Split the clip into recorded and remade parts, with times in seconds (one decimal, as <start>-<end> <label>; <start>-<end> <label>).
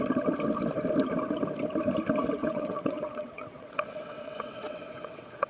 0.0-2.4 recorded; 2.4-5.5 remade